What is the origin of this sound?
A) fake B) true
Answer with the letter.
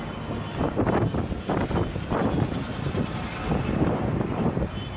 B